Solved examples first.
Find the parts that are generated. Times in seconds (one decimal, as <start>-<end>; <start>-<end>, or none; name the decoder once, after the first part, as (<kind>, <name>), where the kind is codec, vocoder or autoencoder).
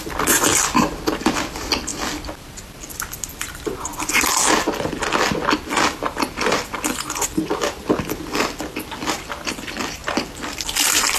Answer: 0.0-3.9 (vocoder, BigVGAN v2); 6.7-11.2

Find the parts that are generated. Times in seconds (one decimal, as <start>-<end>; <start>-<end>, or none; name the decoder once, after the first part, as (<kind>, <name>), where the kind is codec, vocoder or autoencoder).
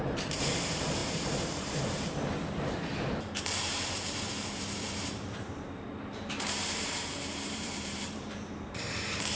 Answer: 0.0-9.4 (vocoder, BigVGAN v2)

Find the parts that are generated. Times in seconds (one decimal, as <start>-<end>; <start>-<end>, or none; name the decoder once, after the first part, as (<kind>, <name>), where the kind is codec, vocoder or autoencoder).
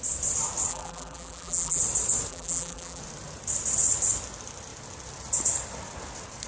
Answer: 0.7-1.8 (vocoder, BigVGAN v2); 2.3-3.0